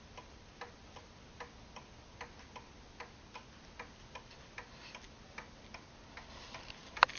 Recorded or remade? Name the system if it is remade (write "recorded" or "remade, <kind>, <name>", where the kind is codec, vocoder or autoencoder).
recorded